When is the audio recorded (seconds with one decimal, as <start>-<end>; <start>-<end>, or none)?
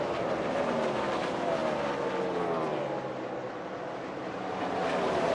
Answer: 1.6-3.9